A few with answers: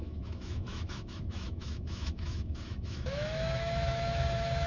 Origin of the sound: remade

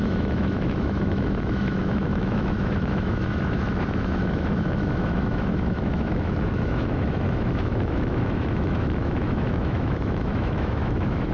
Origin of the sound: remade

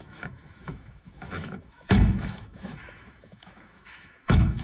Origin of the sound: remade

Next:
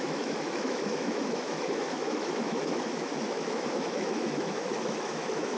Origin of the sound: remade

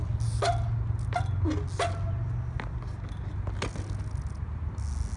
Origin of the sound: recorded